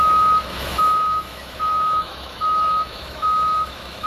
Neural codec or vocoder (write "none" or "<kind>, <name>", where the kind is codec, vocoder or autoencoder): autoencoder, DAC-VAE